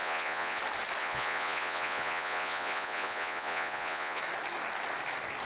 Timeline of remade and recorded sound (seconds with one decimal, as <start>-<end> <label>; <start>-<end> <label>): 0.0-0.6 remade; 0.6-1.0 recorded; 1.0-4.2 remade; 4.2-5.4 recorded